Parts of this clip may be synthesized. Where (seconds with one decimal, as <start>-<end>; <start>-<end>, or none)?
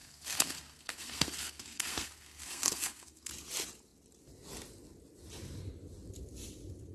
0.0-3.3